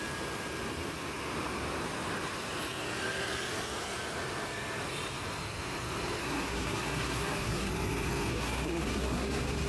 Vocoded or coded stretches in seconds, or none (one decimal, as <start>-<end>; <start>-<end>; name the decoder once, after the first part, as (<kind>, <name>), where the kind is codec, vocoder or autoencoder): 6.2-7.7 (codec, SNAC); 8.3-9.7